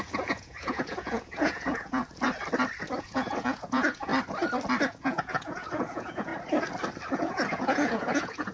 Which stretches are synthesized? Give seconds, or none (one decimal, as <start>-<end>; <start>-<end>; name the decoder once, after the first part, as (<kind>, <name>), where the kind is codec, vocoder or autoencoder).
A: 0.0-2.0 (vocoder, Vocos); 3.0-4.1; 5.0-6.3; 7.1-8.5